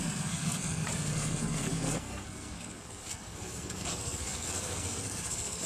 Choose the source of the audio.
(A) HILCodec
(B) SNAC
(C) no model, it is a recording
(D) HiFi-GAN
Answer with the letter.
B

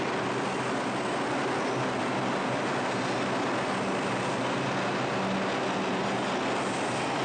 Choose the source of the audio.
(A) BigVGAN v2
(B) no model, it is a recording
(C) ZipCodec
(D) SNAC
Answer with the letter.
B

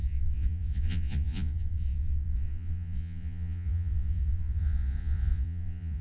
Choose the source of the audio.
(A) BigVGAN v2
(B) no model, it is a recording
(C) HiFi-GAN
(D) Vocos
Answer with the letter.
D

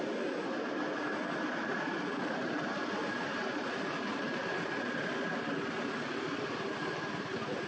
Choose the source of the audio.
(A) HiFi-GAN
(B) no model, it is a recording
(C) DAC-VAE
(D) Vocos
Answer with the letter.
B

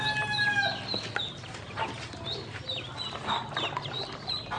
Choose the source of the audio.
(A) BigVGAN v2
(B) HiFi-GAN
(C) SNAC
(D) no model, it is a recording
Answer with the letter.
D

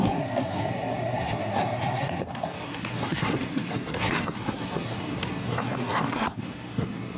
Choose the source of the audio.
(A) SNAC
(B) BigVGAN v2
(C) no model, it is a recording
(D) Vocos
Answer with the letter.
A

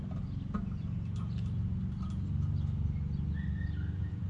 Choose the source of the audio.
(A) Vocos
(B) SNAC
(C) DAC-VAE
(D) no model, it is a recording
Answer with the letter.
D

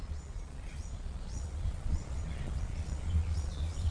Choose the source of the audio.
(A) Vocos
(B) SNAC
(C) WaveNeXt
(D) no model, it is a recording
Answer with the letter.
A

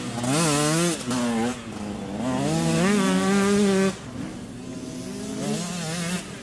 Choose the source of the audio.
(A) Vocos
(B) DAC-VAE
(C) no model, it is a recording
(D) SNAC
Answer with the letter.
C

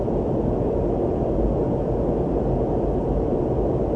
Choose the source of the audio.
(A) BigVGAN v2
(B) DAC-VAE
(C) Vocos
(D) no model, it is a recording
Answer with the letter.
D